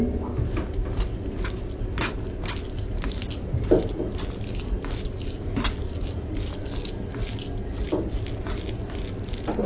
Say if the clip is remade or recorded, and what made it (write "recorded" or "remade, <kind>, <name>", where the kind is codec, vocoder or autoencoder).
recorded